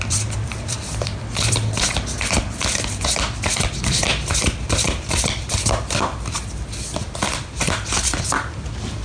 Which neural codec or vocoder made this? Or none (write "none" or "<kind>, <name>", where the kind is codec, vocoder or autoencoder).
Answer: vocoder, BigVGAN v2